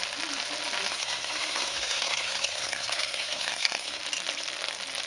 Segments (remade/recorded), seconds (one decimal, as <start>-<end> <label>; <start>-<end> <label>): 0.0-0.9 recorded; 0.9-4.0 remade; 4.0-5.1 recorded

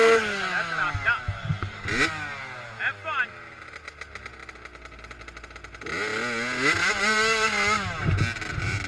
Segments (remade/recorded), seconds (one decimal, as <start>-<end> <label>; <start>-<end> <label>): 0.0-8.9 recorded

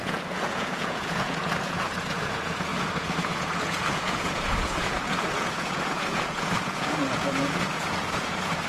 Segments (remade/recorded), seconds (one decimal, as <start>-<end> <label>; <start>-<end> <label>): 0.0-8.7 remade

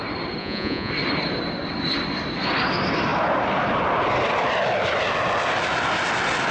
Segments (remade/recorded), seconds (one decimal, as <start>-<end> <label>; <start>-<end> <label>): 0.0-0.4 recorded; 0.4-0.9 remade; 0.9-6.5 recorded

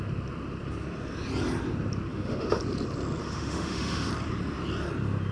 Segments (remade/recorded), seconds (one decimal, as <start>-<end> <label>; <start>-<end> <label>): 0.0-2.1 recorded; 2.1-2.6 remade; 2.6-3.2 recorded; 3.2-4.1 remade; 4.1-5.3 recorded

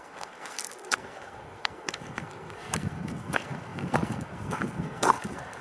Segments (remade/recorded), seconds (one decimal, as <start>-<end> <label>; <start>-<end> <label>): 0.0-5.6 remade

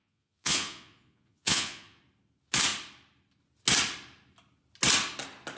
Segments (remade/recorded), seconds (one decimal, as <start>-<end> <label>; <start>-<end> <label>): 0.0-2.0 remade; 2.0-5.6 recorded

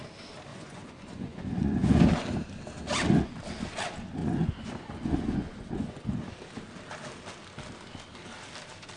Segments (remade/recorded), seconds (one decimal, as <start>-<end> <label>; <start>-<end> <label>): 0.0-0.5 recorded; 0.5-2.0 remade; 2.0-4.2 recorded; 4.2-6.0 remade; 6.0-9.0 recorded